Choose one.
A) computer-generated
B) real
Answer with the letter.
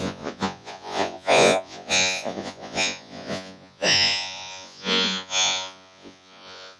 A